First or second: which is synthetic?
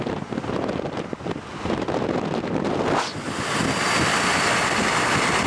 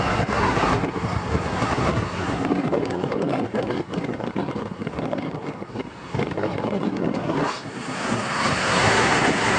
second